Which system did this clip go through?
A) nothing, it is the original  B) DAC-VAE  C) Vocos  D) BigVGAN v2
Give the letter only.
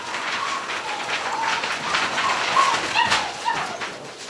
C